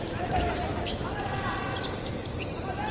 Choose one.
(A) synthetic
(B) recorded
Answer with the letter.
A